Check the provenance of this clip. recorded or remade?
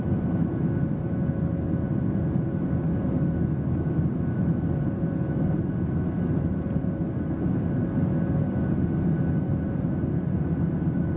recorded